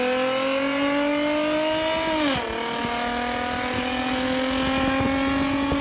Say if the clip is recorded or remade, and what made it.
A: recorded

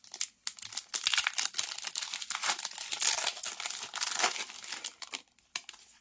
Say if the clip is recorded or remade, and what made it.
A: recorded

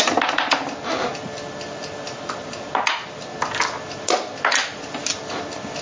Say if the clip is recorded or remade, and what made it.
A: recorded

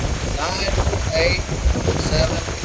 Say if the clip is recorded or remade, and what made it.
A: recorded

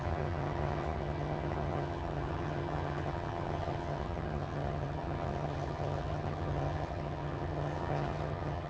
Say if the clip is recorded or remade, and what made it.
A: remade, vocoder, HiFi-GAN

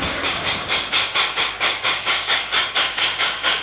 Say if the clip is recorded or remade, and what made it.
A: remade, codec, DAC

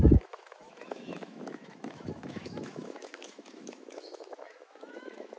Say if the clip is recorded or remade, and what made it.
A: remade, autoencoder, DAC-VAE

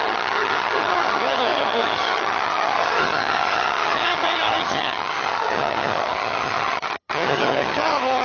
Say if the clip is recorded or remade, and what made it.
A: remade, vocoder, HiFi-GAN